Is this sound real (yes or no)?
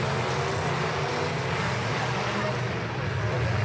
yes